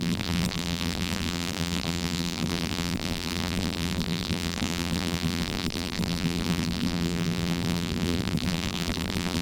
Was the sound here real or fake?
fake